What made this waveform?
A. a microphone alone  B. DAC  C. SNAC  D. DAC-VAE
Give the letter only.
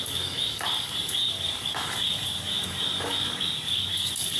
B